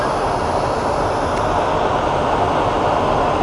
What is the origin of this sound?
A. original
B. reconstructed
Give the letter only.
A